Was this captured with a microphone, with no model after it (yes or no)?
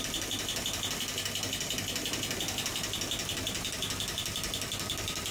yes